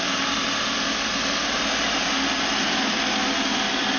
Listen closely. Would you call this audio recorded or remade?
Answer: recorded